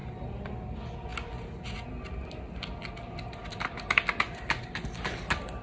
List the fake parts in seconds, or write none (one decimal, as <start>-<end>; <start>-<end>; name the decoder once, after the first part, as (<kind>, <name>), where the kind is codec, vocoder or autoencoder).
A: none